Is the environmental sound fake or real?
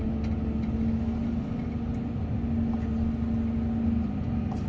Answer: real